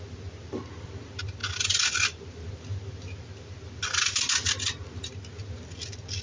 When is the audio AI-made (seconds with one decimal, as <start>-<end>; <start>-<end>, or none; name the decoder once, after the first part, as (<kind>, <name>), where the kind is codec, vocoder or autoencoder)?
none